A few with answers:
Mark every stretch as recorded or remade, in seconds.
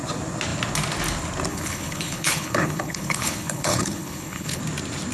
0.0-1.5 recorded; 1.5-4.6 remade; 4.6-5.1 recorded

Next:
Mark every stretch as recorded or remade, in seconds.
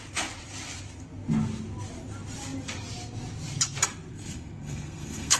0.0-4.1 recorded; 4.1-5.4 remade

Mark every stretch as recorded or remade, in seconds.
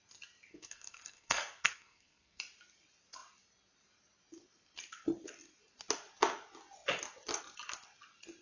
0.0-0.5 recorded; 0.5-2.4 remade; 2.4-8.4 recorded